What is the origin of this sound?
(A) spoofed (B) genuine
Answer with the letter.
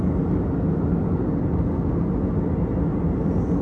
B